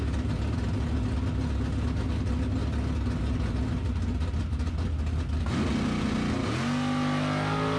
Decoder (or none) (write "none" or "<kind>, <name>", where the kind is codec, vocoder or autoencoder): none